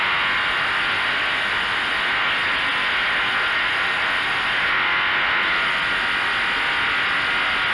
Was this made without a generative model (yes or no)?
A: yes